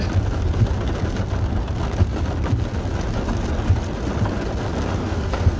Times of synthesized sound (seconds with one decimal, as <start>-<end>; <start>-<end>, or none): 5.0-5.6